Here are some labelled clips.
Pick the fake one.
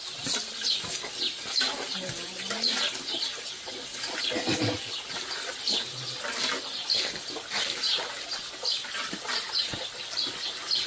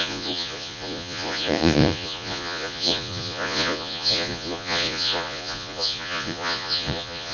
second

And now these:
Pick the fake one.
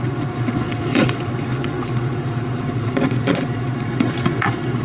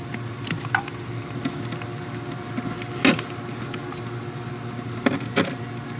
first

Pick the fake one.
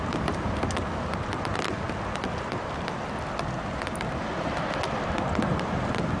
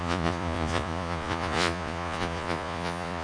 second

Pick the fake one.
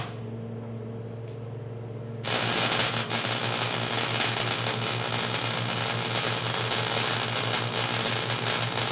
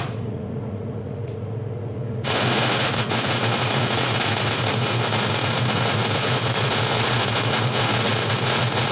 second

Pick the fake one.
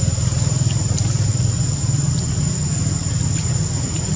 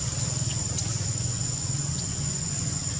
second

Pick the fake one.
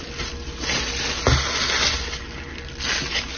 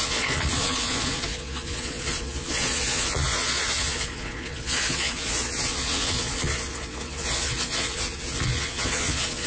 second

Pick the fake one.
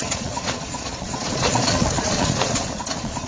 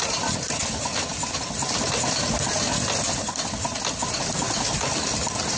first